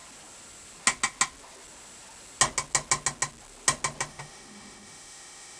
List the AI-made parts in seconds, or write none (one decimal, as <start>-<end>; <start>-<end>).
4.1-5.6